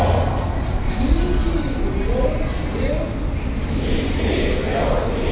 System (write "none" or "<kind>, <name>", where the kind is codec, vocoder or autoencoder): none